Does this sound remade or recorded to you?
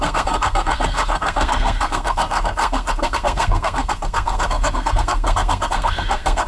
remade